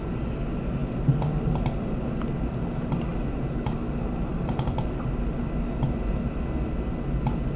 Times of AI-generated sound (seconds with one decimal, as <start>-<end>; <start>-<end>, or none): none

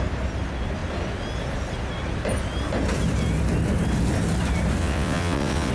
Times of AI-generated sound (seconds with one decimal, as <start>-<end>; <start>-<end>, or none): 4.8-5.7

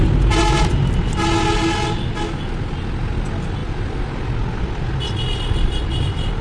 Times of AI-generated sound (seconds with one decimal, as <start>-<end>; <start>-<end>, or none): none

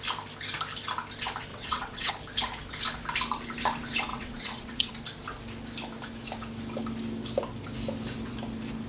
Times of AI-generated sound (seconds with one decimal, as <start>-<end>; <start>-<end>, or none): 1.5-2.1; 4.1-4.9

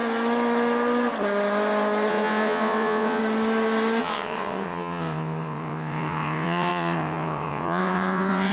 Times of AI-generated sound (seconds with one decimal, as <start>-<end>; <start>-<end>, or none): 2.1-3.2; 4.0-8.5

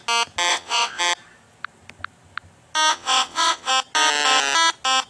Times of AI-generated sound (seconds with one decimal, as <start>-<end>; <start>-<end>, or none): 0.5-1.0; 2.9-3.7